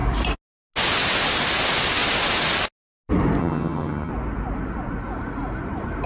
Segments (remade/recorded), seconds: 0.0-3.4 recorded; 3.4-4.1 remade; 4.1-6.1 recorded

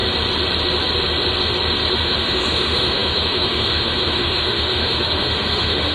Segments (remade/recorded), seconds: 0.0-1.9 recorded; 1.9-5.9 remade